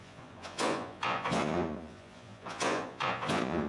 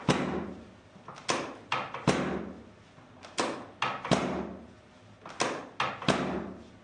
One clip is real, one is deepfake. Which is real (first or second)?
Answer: second